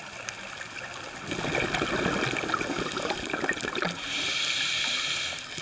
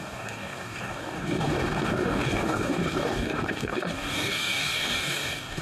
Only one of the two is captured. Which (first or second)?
first